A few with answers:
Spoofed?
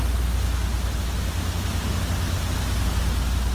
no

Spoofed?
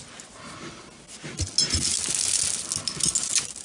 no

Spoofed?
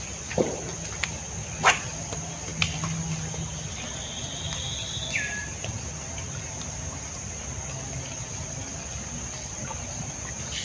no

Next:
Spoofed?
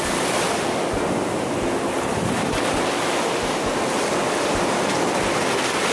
no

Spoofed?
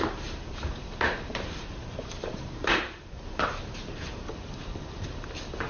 yes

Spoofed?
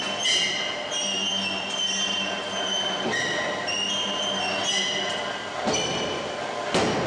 no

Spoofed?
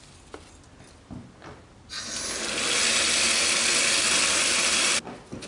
no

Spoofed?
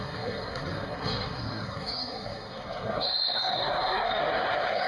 yes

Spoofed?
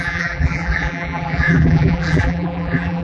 yes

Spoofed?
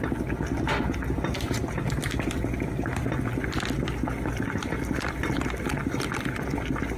yes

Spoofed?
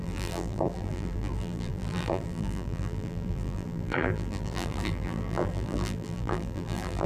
yes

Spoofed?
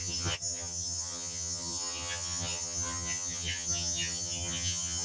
yes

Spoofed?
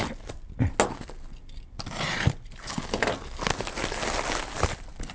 no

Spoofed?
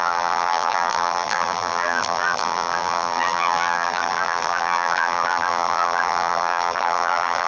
yes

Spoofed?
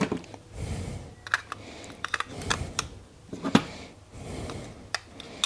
no